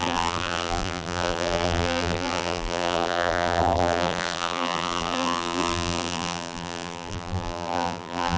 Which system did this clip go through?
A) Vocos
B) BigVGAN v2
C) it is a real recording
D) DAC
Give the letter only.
B